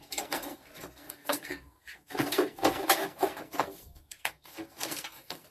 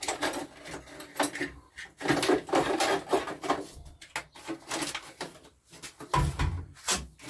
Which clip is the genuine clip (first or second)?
second